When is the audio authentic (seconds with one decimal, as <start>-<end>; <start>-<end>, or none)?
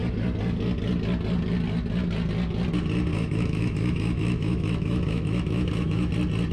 0.0-3.1; 6.1-6.5